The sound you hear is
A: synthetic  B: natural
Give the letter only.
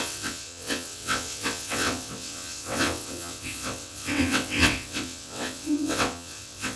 A